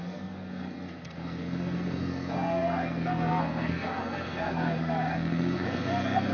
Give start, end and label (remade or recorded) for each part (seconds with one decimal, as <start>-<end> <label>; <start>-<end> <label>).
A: 0.0-6.3 remade